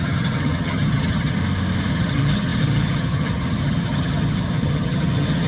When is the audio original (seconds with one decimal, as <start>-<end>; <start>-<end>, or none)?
1.4-1.9